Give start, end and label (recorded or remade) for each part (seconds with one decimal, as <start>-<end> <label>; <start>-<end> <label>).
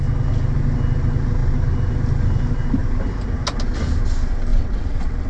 0.0-4.5 recorded; 4.5-5.3 remade